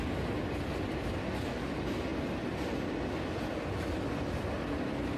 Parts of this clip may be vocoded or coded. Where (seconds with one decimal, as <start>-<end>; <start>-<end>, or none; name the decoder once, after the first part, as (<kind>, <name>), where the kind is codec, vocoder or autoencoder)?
none